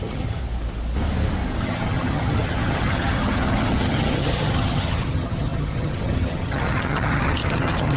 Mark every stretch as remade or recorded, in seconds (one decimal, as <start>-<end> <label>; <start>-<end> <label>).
0.0-0.4 remade; 0.4-1.6 recorded; 1.6-8.0 remade